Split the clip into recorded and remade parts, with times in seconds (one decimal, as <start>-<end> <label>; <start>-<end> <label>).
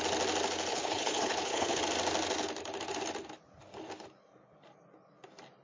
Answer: 0.0-0.7 recorded; 0.7-1.8 remade; 1.8-5.6 recorded